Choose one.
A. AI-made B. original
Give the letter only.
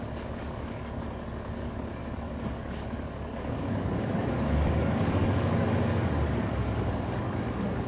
A